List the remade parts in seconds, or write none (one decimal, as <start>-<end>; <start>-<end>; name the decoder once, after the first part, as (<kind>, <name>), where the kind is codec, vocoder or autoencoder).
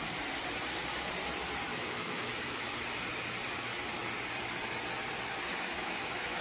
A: 1.7-2.3 (autoencoder, DAC-VAE); 5.5-6.4